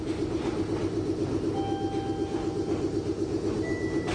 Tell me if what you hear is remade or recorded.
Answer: recorded